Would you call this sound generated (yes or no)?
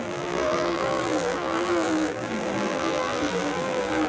yes